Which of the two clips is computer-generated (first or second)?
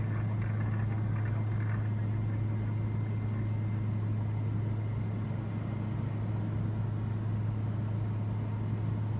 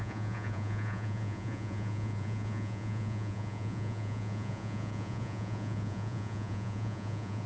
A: second